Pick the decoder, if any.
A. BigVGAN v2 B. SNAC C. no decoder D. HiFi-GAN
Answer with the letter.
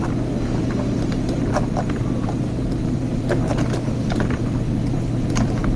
A